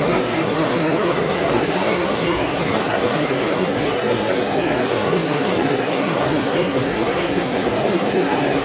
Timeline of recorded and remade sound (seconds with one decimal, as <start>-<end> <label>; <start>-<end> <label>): 0.0-8.6 remade